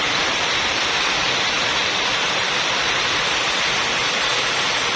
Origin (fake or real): fake